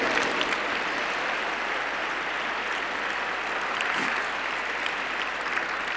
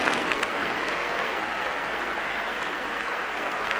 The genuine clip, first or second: first